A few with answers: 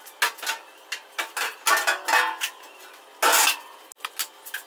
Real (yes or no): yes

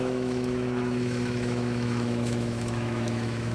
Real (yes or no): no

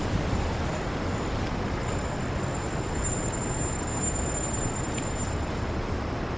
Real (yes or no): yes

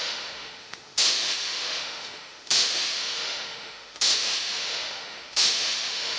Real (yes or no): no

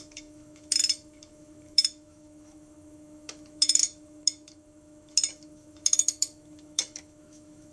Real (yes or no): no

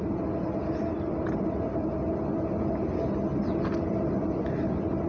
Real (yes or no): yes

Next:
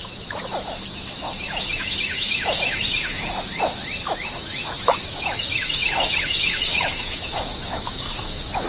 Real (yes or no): no